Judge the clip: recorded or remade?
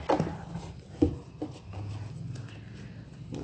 recorded